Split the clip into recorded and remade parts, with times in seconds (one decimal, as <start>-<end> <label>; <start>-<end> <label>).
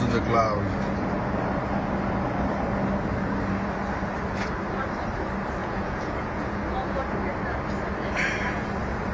0.0-5.6 recorded; 5.6-6.6 remade; 6.6-9.1 recorded